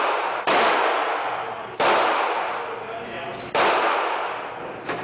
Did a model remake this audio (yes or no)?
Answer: no